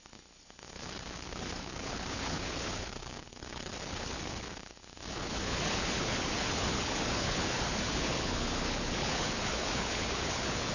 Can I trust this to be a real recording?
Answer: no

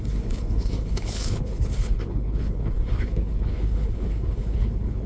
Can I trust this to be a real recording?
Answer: no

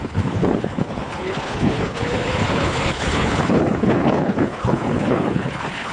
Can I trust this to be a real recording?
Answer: no